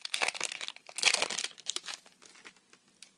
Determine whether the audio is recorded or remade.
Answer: recorded